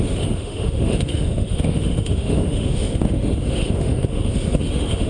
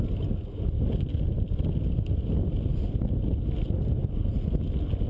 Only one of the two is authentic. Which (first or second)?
second